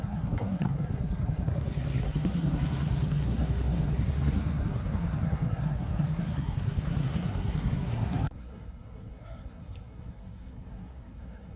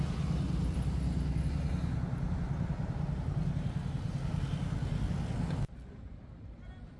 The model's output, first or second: first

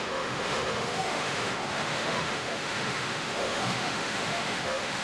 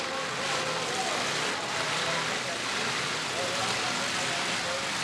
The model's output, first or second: first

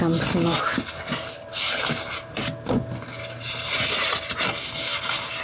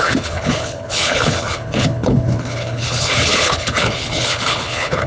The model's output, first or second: second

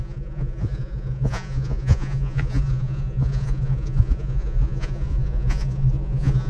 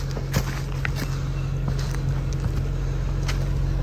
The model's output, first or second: first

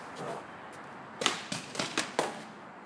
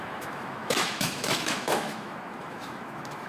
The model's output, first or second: second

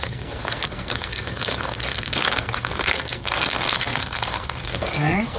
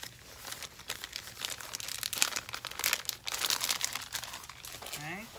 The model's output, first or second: first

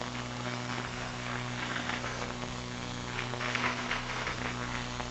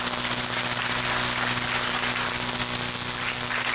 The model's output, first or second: first